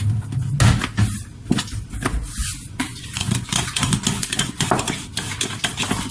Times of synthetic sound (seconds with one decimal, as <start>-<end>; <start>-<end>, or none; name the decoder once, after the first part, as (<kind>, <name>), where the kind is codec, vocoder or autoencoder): 2.4-4.7 (vocoder, Vocos)